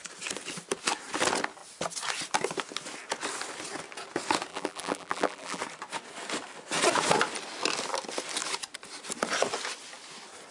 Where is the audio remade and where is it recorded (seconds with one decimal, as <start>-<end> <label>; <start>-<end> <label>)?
0.0-4.5 recorded; 4.5-5.6 remade; 5.6-10.5 recorded